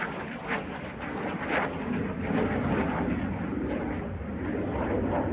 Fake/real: real